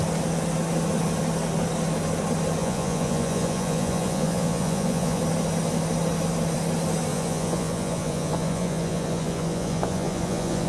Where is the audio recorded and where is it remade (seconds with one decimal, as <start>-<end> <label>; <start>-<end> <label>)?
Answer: 0.0-2.6 recorded; 2.6-5.2 remade; 5.2-7.1 recorded; 7.1-10.7 remade